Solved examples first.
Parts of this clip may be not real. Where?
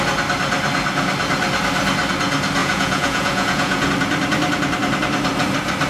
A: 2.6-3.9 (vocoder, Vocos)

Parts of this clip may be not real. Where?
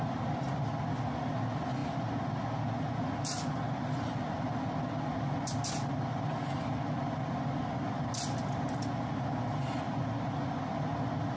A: none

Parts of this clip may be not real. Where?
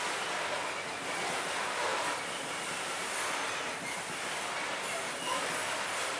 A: none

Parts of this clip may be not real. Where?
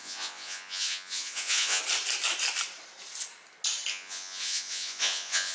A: 0.0-1.8 (vocoder, Vocos); 3.9-5.5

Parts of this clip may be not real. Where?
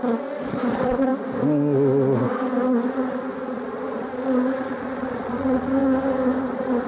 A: 0.0-1.1 (vocoder, Vocos); 2.9-5.8; 6.4-6.9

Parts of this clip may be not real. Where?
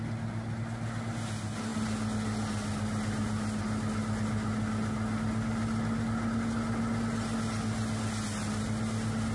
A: none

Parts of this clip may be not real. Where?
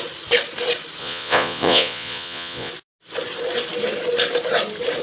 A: 1.0-2.7 (vocoder, Vocos)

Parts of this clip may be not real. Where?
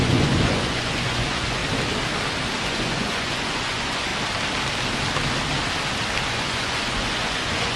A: 0.0-1.6 (vocoder, Vocos); 2.6-4.1; 6.3-7.8